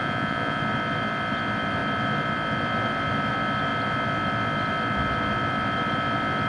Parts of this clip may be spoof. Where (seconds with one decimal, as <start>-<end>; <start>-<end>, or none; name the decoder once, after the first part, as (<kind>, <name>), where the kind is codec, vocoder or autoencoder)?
0.0-0.6 (vocoder, Vocos)